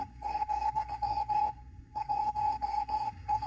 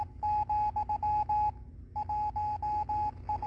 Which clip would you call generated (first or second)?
first